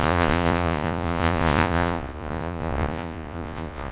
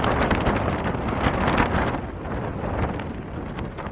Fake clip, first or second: first